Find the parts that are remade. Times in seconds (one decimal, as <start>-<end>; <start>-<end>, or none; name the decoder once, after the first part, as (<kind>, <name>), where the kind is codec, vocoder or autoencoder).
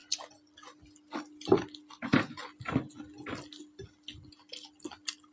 none